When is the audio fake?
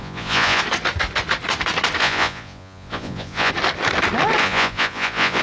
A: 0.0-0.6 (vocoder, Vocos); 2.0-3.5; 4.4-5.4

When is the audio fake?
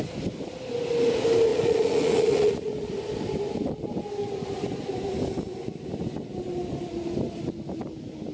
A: 1.5-2.7 (vocoder, Vocos)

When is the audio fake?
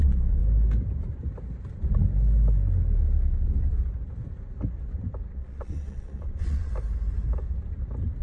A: 0.0-0.4 (vocoder, Vocos); 5.3-6.7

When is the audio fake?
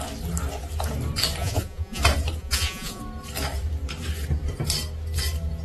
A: 1.4-2.0 (vocoder, Vocos); 2.4-3.0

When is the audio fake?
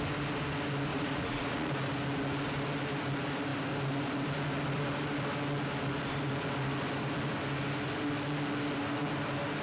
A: 0.9-1.7 (vocoder, Vocos)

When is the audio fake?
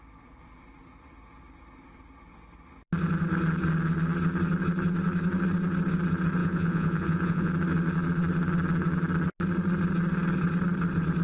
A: 6.4-7.5 (vocoder, Vocos)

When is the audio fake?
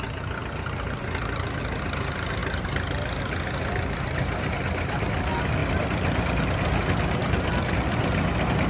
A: none